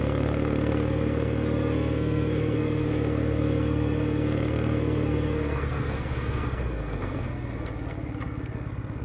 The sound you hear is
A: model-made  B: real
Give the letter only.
A